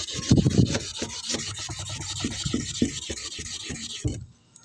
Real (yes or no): yes